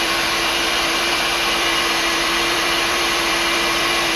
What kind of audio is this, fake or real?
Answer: fake